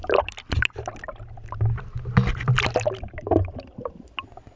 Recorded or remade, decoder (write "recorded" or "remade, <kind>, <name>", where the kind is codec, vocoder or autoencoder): recorded